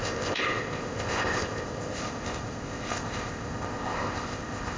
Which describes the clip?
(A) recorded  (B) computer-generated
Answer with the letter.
B